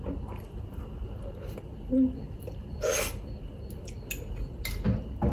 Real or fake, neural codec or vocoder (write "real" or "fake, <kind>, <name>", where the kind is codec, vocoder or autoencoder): real